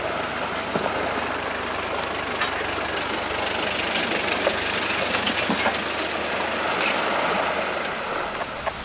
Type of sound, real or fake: real